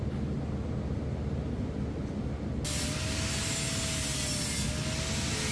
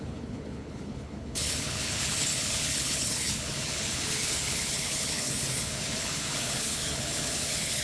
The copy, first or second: second